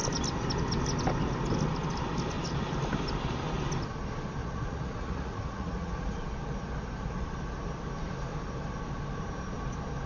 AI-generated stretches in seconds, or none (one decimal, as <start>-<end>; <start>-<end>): 4.4-6.2